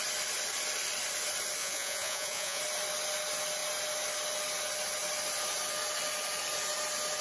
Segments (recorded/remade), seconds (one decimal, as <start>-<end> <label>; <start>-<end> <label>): 0.0-1.6 recorded; 1.6-2.6 remade; 2.6-7.2 recorded